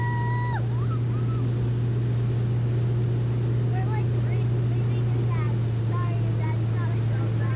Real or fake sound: real